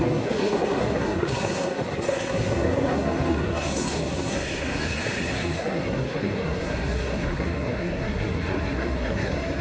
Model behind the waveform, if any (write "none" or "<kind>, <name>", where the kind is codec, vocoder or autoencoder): codec, SNAC